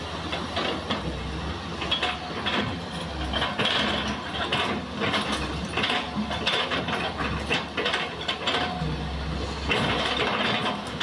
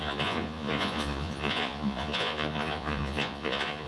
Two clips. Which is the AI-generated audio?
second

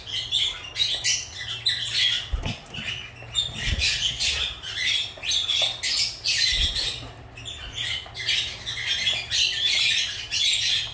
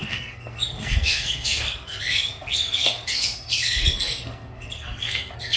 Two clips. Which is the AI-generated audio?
second